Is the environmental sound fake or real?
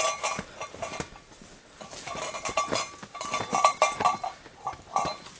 real